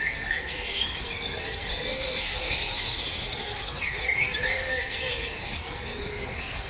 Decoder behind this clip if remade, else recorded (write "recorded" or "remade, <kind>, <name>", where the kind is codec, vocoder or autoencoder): remade, codec, SNAC